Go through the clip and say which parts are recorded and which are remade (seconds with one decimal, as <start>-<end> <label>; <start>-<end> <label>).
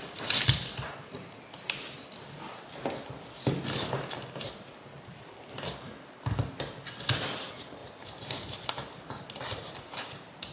0.0-10.5 recorded